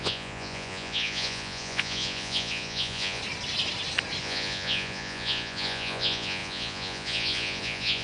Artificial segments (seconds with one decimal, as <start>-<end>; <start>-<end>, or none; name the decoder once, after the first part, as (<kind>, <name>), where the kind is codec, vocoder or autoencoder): 0.0-3.2 (vocoder, Vocos); 4.2-8.0